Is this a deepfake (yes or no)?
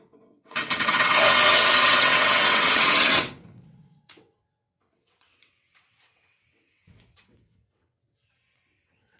yes